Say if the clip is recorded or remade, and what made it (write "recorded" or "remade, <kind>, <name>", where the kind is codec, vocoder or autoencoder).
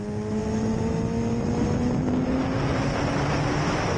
recorded